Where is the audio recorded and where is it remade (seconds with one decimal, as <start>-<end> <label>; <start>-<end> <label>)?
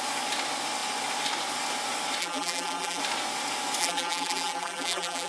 0.0-2.2 recorded; 2.2-3.0 remade; 3.0-3.8 recorded; 3.8-5.3 remade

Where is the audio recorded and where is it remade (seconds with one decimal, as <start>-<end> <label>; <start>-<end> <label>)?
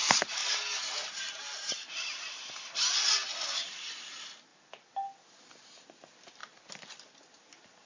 0.0-4.5 recorded; 4.5-5.2 remade; 5.2-6.4 recorded; 6.4-7.1 remade; 7.1-7.9 recorded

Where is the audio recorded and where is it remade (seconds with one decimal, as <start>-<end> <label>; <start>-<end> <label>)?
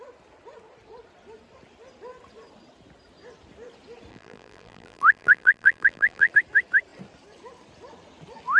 0.0-4.1 recorded; 4.1-6.3 remade; 6.3-8.6 recorded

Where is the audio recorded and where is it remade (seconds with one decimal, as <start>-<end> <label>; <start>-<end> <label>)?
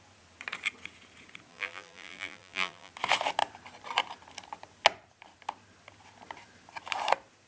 0.0-1.5 recorded; 1.5-2.9 remade; 2.9-7.5 recorded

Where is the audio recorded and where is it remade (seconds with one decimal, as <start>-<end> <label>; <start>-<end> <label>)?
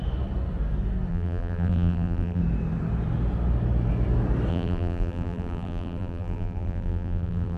0.0-1.1 recorded; 1.1-2.4 remade; 2.4-4.5 recorded; 4.5-7.6 remade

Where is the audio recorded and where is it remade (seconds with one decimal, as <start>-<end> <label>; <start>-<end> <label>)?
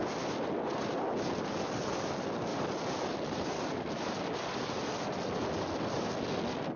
0.0-0.9 remade; 0.9-2.5 recorded; 2.5-6.3 remade; 6.3-6.8 recorded